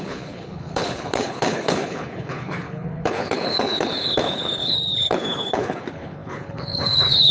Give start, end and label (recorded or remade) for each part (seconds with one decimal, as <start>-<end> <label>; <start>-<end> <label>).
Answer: 0.0-7.3 remade